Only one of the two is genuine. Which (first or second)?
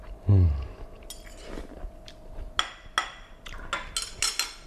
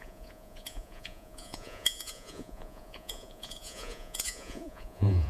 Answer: first